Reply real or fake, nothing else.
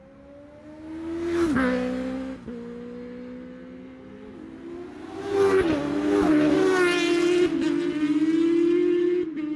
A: real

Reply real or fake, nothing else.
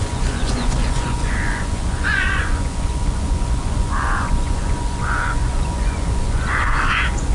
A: fake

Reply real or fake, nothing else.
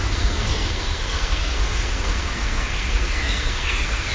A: fake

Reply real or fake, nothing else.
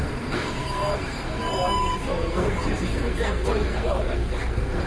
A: fake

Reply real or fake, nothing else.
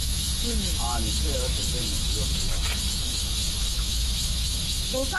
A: fake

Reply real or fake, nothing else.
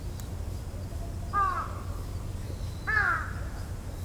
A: real